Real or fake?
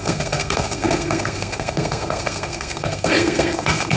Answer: fake